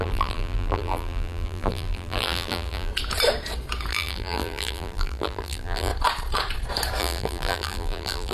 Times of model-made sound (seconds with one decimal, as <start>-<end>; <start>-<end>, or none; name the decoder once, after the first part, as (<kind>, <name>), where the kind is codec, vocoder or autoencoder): 0.0-2.9 (vocoder, BigVGAN v2); 3.9-5.9; 7.0-8.3